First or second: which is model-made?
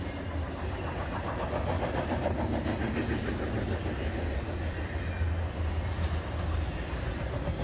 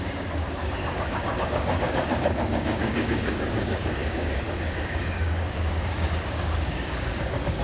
second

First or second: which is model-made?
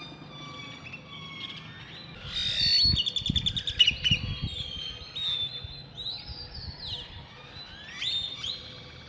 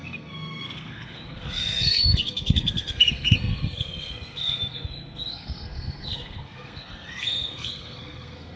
second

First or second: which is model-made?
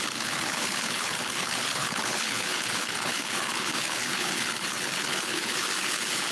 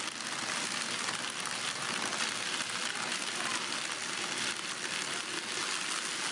first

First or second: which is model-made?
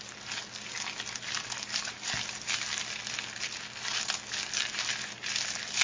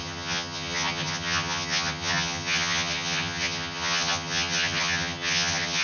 second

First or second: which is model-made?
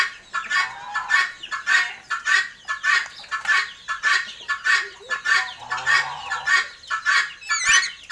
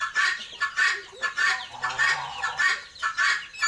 second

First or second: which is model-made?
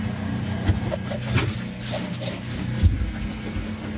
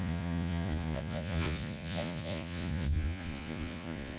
second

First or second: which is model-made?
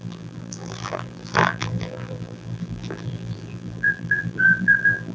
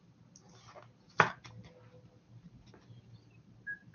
first